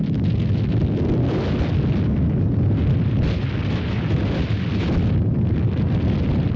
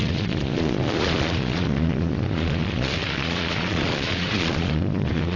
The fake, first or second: second